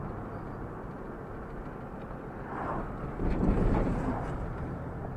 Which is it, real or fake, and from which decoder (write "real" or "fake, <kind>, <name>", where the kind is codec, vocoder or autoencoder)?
real